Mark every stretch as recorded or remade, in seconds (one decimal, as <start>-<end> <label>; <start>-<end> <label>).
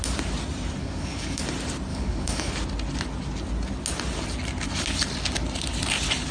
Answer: 0.0-0.8 recorded; 0.8-1.4 remade; 1.4-1.9 recorded; 1.9-2.5 remade; 2.5-6.3 recorded